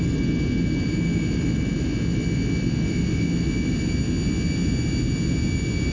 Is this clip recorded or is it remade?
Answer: recorded